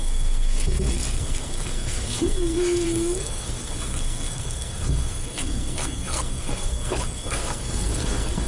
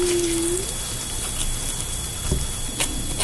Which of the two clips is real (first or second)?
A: second